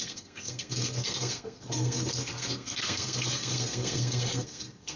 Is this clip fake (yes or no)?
yes